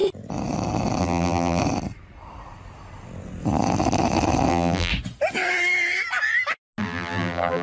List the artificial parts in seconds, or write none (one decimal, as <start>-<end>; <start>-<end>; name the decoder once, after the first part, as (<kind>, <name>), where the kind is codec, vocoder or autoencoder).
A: 1.0-1.6 (vocoder, BigVGAN v2); 4.5-4.9; 6.8-7.6